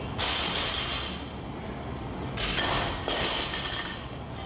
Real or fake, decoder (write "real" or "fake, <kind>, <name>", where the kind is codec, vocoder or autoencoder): real